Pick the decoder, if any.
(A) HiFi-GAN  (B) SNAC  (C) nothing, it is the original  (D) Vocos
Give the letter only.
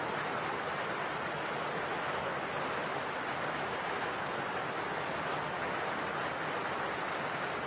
C